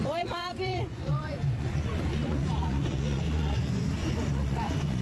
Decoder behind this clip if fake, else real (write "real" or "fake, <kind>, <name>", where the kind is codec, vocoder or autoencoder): fake, vocoder, Vocos